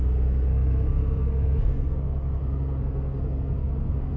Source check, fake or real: fake